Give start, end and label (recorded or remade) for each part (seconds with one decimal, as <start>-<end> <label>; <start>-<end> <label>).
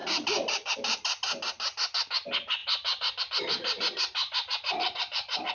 0.0-1.1 remade; 1.1-4.4 recorded; 4.4-5.5 remade